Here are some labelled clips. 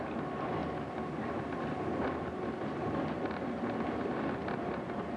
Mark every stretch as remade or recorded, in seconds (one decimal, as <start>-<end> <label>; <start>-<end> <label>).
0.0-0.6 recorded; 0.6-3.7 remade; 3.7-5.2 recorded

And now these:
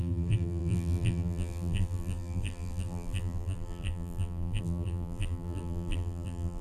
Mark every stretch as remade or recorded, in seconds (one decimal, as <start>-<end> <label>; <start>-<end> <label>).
0.0-6.6 remade

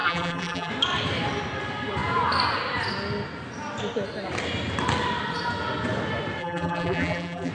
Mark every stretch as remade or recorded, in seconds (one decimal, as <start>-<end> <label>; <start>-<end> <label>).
0.0-0.7 remade; 0.7-6.4 recorded; 6.4-7.5 remade

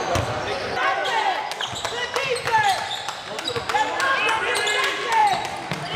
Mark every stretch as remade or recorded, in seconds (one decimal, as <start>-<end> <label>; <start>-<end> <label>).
0.0-1.0 remade; 1.0-4.6 recorded; 4.6-5.2 remade; 5.2-6.0 recorded